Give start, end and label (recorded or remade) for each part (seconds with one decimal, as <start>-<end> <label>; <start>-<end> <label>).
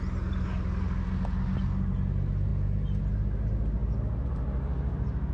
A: 0.0-5.3 recorded